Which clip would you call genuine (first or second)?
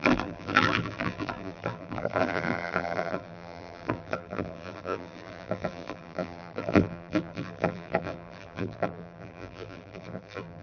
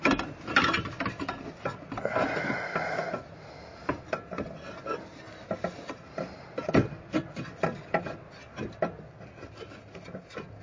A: second